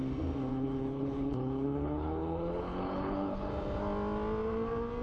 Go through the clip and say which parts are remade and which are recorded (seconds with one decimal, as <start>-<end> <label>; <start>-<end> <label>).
0.0-0.5 recorded; 0.5-3.5 remade; 3.5-5.0 recorded